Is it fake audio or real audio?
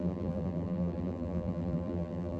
fake